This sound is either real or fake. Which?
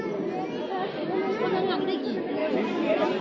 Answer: real